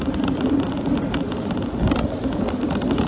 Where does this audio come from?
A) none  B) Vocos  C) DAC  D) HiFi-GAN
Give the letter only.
A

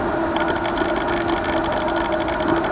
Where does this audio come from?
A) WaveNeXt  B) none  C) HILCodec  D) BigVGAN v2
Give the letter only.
B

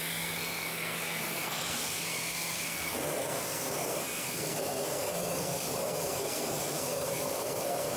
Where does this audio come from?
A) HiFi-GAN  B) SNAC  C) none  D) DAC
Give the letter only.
B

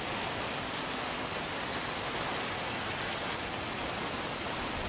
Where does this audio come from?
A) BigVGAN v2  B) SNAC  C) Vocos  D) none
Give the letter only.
D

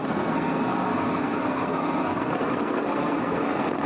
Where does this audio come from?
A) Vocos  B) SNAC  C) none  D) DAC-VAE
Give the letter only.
B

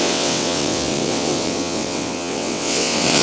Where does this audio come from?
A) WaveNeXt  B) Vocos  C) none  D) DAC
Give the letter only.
A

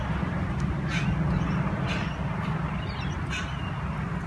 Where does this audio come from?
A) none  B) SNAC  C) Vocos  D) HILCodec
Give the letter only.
A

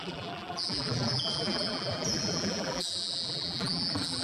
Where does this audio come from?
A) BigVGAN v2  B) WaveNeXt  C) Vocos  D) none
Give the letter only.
A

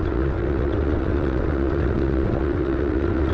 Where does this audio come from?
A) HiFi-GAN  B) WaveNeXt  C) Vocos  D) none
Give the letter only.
B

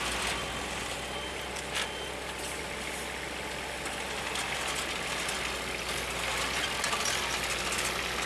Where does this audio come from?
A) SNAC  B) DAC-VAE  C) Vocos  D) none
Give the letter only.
D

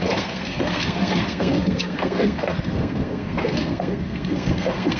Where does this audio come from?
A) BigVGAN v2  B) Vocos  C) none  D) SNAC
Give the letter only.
D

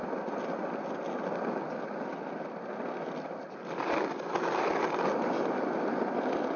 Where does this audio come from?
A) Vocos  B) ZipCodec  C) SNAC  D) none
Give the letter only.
D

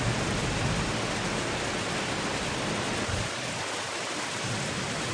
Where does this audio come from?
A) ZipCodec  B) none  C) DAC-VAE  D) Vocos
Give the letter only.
B